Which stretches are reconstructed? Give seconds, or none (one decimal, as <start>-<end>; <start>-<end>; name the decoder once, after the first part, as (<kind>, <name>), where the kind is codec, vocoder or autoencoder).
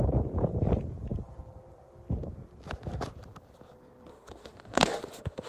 4.1-5.5 (autoencoder, DAC-VAE)